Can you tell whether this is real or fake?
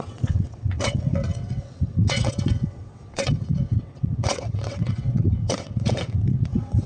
fake